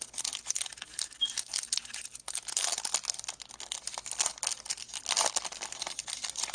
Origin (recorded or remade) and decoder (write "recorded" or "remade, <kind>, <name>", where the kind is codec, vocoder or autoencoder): recorded